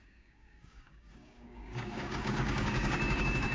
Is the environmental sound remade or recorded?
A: remade